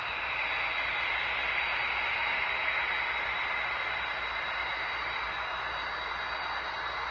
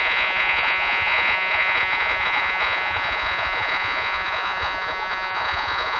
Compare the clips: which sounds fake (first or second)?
second